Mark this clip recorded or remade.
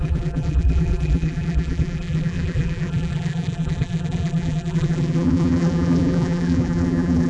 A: remade